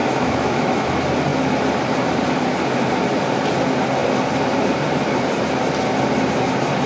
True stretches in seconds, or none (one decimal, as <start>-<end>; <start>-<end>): 0.9-6.9